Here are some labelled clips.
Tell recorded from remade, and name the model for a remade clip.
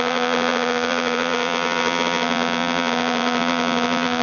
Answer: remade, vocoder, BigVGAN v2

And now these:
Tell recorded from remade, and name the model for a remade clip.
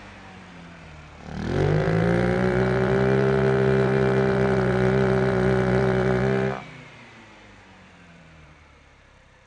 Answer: remade, vocoder, BigVGAN v2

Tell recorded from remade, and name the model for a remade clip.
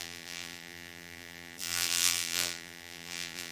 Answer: remade, vocoder, BigVGAN v2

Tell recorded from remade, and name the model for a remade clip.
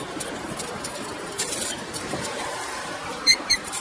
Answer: remade, vocoder, BigVGAN v2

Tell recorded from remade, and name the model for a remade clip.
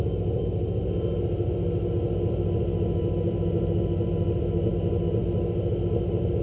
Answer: recorded